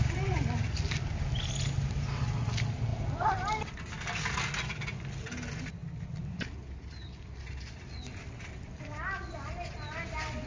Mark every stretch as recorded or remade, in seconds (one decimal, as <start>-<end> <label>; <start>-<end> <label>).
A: 0.0-10.5 recorded